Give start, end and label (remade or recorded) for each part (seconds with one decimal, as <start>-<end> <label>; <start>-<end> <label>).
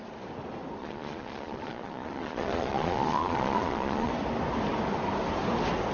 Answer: 0.0-0.8 recorded; 0.8-4.1 remade; 4.1-5.9 recorded